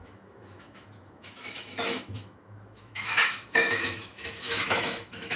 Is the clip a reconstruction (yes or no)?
yes